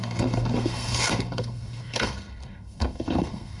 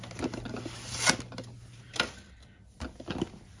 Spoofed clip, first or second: first